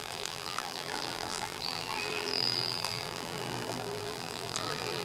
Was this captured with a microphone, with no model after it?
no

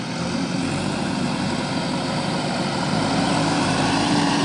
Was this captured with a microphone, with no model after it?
no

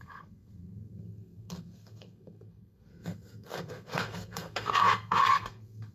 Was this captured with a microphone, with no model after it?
no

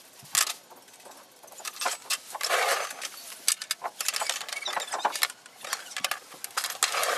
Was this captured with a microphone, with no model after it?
yes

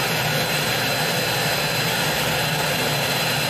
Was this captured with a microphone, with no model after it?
yes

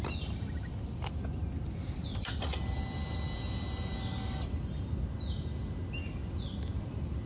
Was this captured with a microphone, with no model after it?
yes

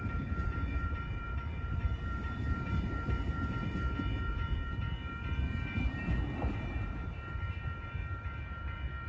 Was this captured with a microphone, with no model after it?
no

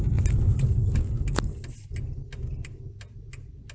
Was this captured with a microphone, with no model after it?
yes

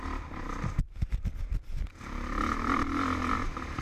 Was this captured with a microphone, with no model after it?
yes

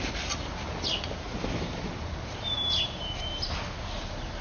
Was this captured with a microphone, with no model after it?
yes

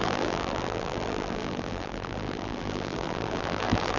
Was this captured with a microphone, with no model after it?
no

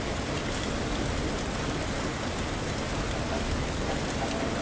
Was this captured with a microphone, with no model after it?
yes